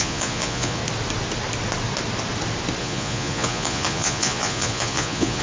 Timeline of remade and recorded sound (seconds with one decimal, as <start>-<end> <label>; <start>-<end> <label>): 0.0-0.8 remade; 0.8-2.8 recorded; 2.8-5.4 remade